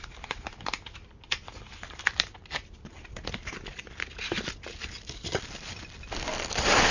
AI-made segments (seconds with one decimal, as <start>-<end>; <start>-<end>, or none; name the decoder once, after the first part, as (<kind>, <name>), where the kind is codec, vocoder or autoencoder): none